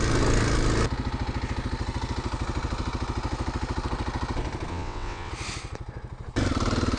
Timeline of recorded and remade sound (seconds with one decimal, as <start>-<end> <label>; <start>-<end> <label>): 0.0-4.7 recorded; 4.7-5.3 remade; 5.3-7.0 recorded